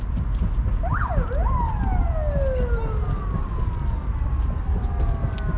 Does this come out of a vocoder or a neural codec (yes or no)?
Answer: no